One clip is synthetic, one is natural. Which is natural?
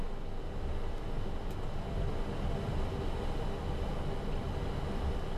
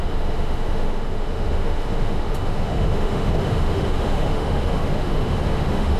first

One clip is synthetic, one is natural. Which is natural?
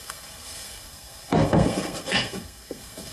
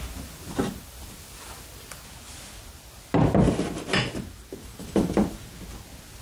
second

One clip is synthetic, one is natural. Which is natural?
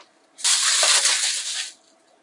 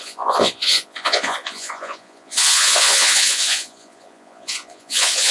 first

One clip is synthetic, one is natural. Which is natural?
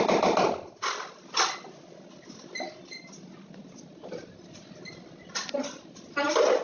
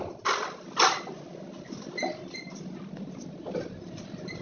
first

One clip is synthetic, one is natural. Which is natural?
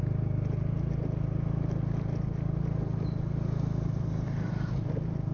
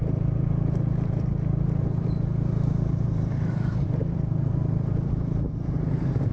first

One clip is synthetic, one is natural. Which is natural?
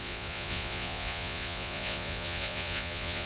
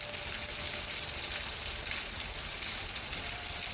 second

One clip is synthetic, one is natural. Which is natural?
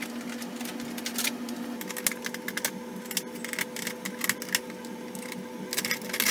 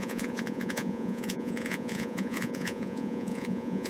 first